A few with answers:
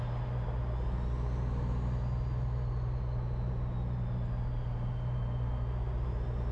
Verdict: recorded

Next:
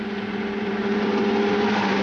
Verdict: remade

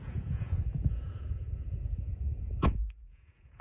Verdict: remade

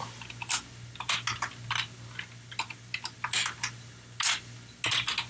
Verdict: recorded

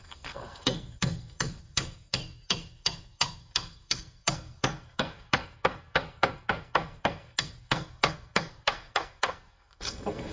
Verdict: remade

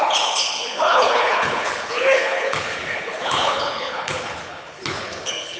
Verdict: remade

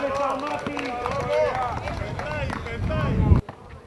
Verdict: recorded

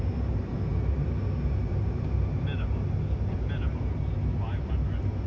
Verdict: recorded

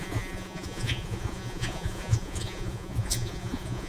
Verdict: remade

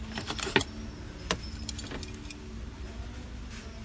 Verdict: recorded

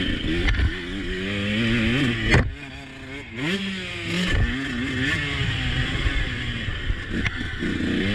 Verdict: recorded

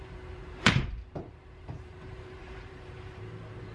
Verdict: remade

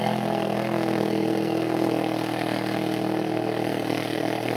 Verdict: remade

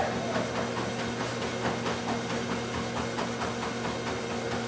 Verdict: recorded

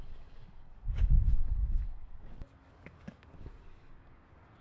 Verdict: remade